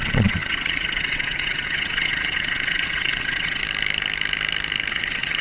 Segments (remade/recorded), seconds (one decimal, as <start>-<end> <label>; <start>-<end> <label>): 0.0-3.6 remade; 3.6-4.9 recorded; 4.9-5.4 remade